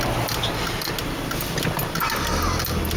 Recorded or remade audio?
recorded